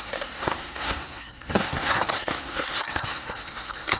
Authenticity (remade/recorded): remade